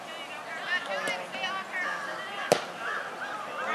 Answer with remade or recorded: recorded